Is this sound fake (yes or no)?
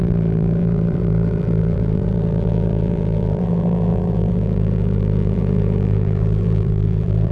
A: yes